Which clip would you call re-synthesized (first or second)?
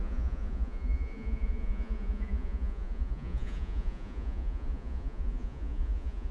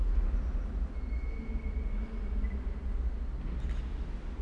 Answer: first